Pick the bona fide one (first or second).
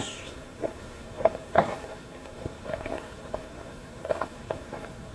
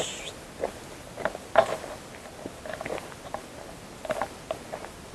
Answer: second